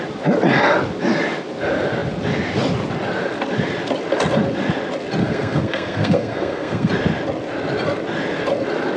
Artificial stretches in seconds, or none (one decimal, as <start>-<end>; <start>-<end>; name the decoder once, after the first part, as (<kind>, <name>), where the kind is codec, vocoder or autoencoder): 5.2-6.9 (codec, SNAC)